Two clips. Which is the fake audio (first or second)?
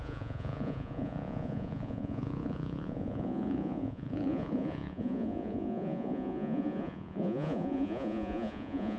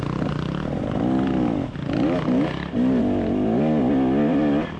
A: first